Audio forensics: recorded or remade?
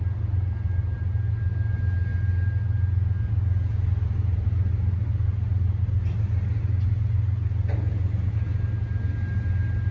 recorded